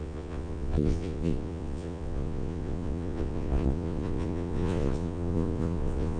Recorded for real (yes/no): no